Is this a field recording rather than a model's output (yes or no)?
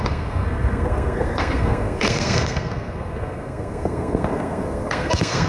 no